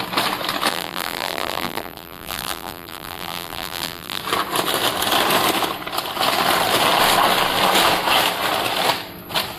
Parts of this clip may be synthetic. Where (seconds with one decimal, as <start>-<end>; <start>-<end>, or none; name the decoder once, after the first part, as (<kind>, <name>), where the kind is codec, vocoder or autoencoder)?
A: 0.7-4.2 (vocoder, BigVGAN v2)